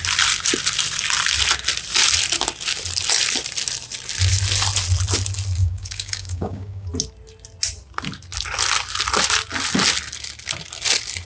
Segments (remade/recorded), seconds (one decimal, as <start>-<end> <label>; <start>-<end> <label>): 0.0-5.6 recorded; 5.6-6.9 remade; 6.9-11.2 recorded